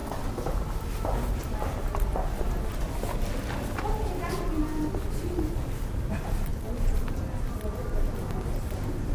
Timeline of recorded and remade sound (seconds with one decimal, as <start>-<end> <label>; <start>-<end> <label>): 0.0-6.5 recorded; 6.5-7.0 remade; 7.0-9.1 recorded